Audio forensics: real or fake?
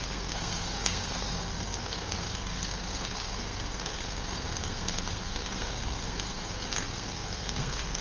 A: fake